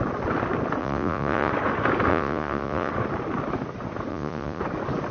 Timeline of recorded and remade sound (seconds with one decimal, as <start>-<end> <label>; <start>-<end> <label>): 0.0-0.8 recorded; 0.8-1.5 remade; 1.5-2.1 recorded; 2.1-2.9 remade; 2.9-4.1 recorded; 4.1-4.6 remade; 4.6-5.1 recorded